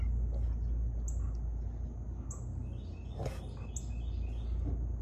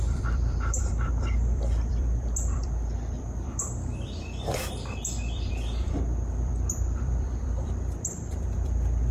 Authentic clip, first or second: first